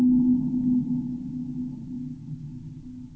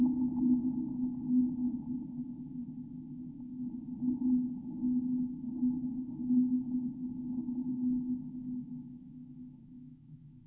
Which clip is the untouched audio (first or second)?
first